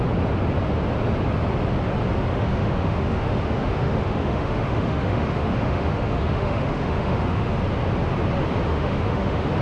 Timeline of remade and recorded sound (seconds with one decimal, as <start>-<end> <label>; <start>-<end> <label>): 0.0-2.3 recorded; 2.3-7.6 remade; 7.6-8.7 recorded; 8.7-9.6 remade

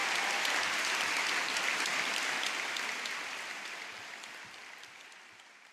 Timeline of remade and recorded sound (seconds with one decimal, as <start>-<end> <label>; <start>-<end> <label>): 0.0-5.7 recorded

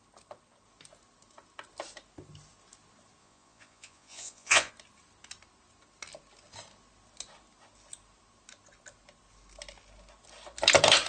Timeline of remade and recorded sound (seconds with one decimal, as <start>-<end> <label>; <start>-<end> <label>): 0.0-3.2 recorded; 3.2-4.7 remade; 4.7-11.1 recorded

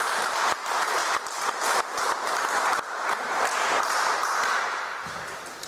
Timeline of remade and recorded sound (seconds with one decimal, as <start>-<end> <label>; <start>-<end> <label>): 0.0-1.0 remade; 1.0-2.8 recorded; 2.8-5.7 remade

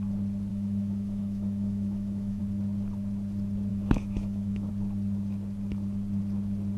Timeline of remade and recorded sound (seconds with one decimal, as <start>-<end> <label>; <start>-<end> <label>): 0.0-0.5 recorded; 0.5-2.4 remade; 2.4-3.7 recorded; 3.7-4.7 remade; 4.7-6.8 recorded

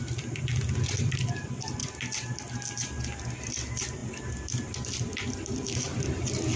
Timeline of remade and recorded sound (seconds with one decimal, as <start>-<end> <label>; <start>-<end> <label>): 0.0-0.5 remade; 0.5-1.0 recorded; 1.0-1.8 remade; 1.8-3.4 recorded; 3.4-4.0 remade; 4.0-4.9 recorded; 4.9-6.6 remade